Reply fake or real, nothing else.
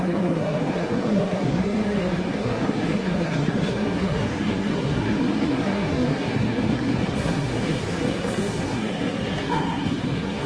fake